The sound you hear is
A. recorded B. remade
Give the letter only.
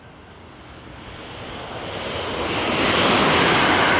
A